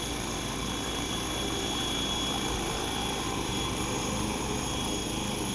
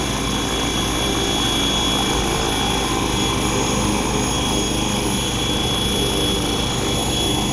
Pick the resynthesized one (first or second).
first